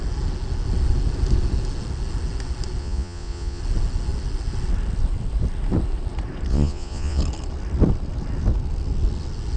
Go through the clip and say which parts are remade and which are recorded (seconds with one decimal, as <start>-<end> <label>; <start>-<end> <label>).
0.0-2.8 recorded; 2.8-3.6 remade; 3.6-6.5 recorded; 6.5-7.2 remade; 7.2-9.6 recorded